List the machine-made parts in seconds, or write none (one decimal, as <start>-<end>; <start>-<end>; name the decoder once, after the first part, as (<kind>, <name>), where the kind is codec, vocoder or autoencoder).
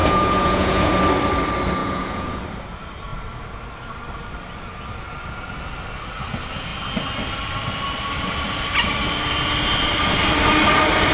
0.0-0.9 (vocoder, Vocos); 1.8-2.4